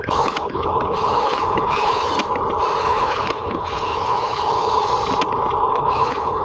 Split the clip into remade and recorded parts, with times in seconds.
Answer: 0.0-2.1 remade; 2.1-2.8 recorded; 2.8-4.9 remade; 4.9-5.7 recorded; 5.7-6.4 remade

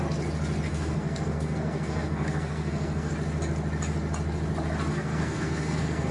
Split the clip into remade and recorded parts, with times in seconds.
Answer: 0.0-0.7 recorded; 0.7-3.1 remade; 3.1-4.9 recorded; 4.9-6.1 remade

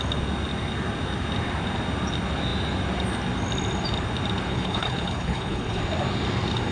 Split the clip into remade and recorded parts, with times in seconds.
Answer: 0.0-4.5 recorded; 4.5-5.8 remade; 5.8-6.7 recorded

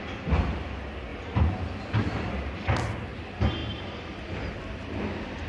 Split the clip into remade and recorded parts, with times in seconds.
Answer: 0.0-3.6 recorded; 3.6-4.3 remade; 4.3-5.5 recorded